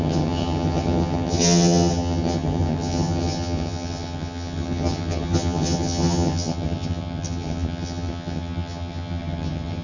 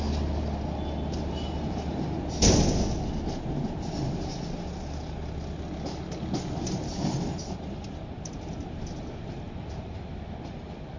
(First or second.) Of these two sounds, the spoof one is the first